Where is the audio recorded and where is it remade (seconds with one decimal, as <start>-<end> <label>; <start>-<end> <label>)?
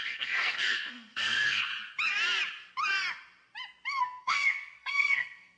0.0-1.7 remade; 1.7-4.0 recorded; 4.0-5.6 remade